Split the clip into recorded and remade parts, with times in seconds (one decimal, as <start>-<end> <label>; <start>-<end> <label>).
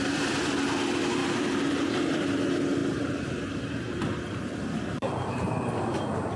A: 0.0-1.2 recorded; 1.2-2.3 remade; 2.3-2.8 recorded; 2.8-4.0 remade; 4.0-5.0 recorded; 5.0-5.9 remade; 5.9-6.4 recorded